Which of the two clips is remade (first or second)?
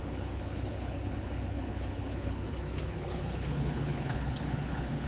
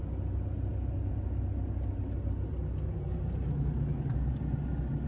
first